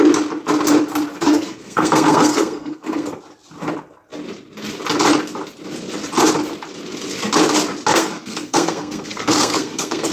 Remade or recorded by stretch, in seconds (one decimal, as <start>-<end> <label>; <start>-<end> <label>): 0.0-1.1 recorded; 1.1-3.2 remade; 3.2-7.9 recorded; 7.9-10.1 remade